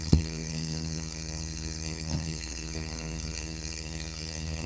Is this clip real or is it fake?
fake